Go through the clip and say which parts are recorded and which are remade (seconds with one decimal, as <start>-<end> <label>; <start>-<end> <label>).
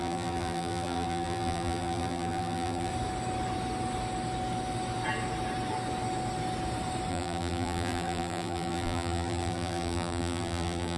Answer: 0.0-2.9 remade; 2.9-7.1 recorded; 7.1-11.0 remade